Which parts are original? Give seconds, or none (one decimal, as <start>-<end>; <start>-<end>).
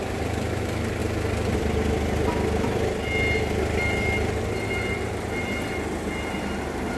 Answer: 1.0-4.7